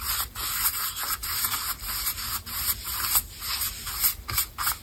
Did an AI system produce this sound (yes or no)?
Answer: no